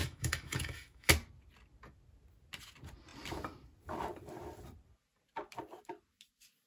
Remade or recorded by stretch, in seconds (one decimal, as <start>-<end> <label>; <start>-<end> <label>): 0.0-1.1 remade; 1.1-6.7 recorded